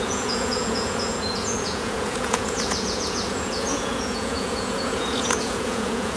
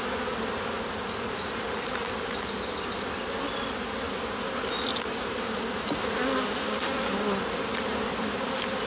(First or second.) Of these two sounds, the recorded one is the second